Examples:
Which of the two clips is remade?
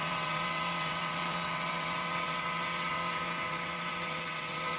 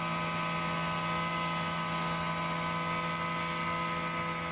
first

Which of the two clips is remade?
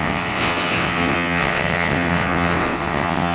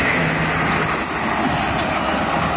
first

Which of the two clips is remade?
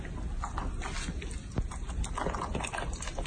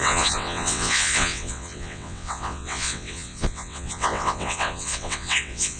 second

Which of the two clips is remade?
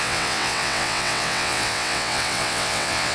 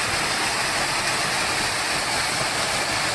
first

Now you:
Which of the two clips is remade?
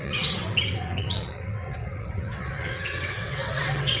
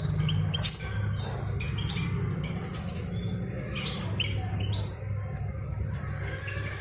first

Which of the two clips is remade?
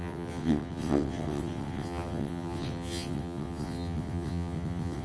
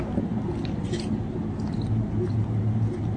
first